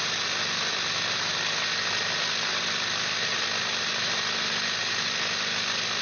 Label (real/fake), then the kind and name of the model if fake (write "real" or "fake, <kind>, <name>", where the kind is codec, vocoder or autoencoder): real